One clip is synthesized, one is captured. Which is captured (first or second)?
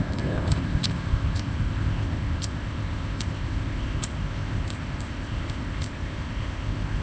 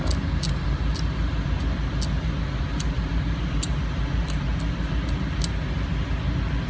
second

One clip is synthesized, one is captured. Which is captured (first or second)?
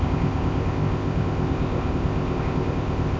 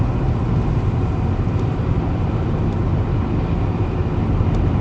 second